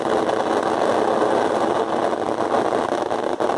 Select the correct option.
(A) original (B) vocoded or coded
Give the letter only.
A